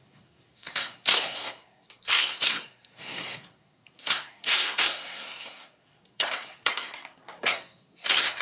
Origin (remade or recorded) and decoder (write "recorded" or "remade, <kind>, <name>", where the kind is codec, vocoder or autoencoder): remade, codec, SNAC